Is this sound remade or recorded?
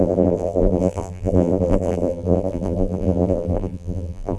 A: remade